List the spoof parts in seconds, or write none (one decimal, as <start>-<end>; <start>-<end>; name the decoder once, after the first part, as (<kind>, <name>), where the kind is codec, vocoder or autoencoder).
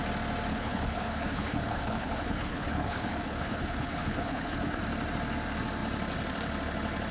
0.5-4.8 (codec, HILCodec)